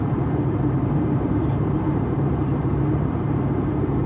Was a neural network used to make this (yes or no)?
yes